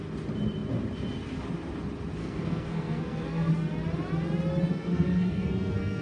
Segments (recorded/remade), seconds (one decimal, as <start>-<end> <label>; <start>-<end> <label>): 0.0-2.2 recorded; 2.2-3.5 remade; 3.5-4.7 recorded; 4.7-6.0 remade